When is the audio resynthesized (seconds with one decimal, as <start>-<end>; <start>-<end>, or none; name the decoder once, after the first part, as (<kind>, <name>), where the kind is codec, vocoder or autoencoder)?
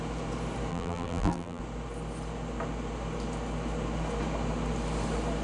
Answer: 0.7-1.6 (vocoder, BigVGAN v2)